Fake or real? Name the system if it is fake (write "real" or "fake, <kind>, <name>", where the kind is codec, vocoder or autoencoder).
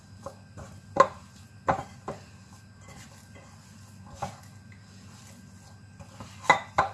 real